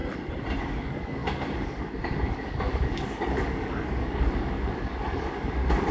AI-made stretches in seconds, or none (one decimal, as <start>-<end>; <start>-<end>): 0.6-5.9